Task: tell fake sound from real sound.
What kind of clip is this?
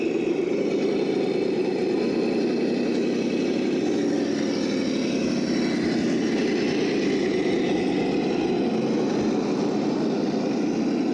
real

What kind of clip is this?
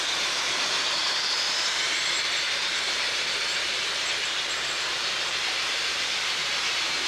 fake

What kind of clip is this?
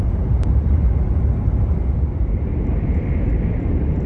fake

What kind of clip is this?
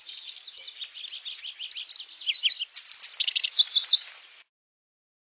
real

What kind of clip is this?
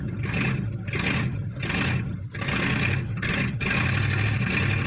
real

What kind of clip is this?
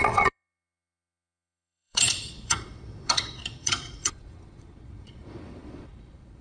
fake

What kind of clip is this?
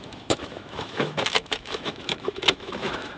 fake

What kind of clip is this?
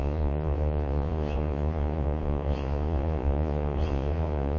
fake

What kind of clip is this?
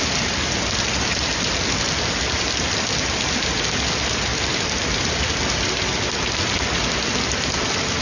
real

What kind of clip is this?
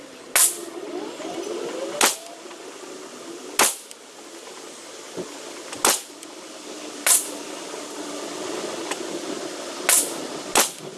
real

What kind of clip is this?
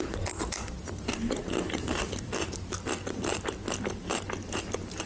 real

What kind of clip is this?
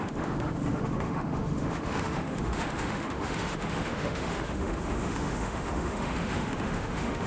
fake